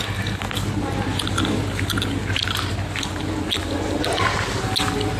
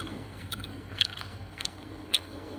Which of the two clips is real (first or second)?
first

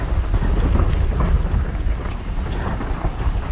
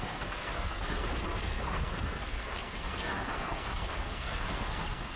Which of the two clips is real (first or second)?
first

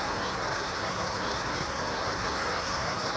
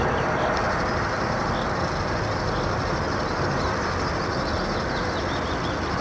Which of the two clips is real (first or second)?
second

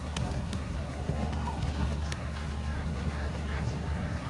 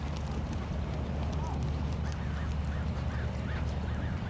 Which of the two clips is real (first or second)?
second